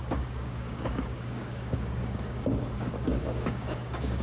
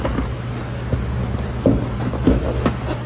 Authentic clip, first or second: second